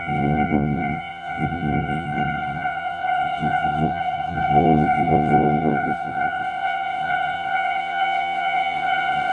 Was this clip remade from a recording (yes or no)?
yes